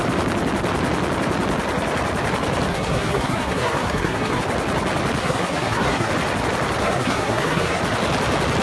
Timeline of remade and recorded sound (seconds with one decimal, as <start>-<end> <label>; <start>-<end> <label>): 0.0-2.7 recorded; 2.7-4.4 remade; 4.4-5.2 recorded; 5.2-6.1 remade; 6.1-6.8 recorded; 6.8-7.8 remade; 7.8-8.6 recorded